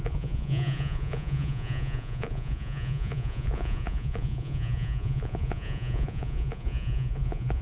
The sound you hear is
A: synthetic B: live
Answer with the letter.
A